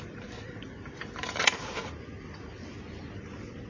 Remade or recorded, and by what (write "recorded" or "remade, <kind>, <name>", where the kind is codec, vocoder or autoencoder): recorded